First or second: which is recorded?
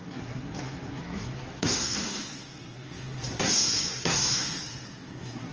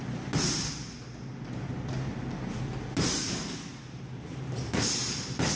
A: second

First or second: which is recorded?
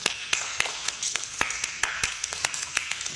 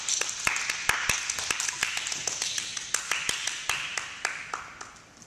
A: second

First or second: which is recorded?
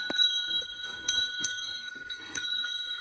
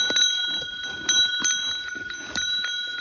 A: second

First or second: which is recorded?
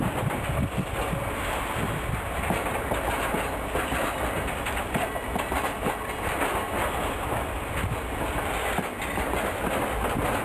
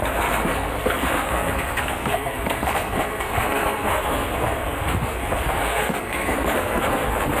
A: first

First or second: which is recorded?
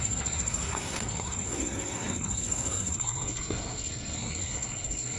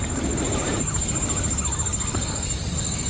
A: second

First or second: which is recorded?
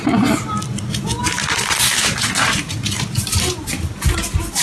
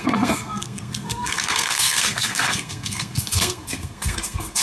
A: first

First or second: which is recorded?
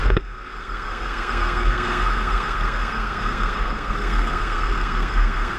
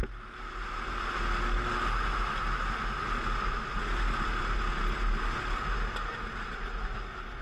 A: second